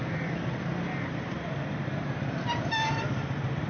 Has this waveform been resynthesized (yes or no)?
no